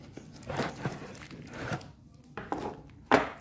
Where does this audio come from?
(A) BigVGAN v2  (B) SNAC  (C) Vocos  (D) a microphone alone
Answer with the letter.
A